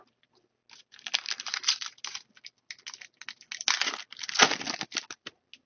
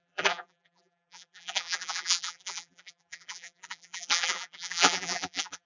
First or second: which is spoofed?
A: second